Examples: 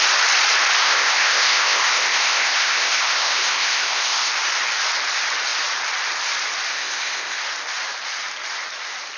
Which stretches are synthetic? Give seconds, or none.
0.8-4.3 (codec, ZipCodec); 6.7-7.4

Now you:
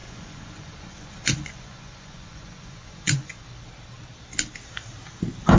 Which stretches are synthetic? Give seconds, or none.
0.0-3.4 (vocoder, Vocos)

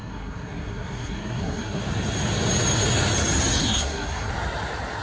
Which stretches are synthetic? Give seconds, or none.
0.0-1.8 (codec, SNAC); 3.6-4.3

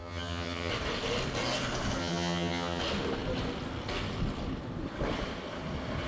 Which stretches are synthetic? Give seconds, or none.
0.0-0.7 (vocoder, HiFi-GAN); 2.0-2.8

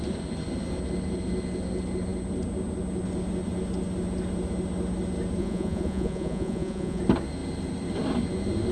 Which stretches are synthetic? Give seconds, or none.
5.4-7.0 (vocoder, Vocos)

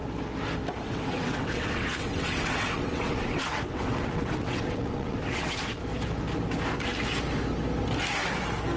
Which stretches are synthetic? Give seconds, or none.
0.8-5.8 (vocoder, WaveNeXt)